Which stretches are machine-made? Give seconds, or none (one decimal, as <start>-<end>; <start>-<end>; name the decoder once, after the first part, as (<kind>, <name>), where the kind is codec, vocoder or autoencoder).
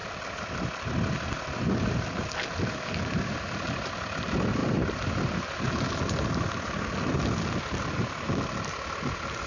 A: none